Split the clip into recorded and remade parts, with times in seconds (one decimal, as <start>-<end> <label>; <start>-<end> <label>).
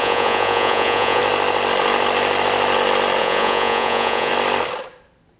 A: 0.0-1.2 remade; 1.2-3.2 recorded; 3.2-4.3 remade; 4.3-5.4 recorded